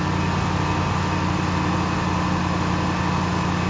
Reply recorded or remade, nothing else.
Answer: recorded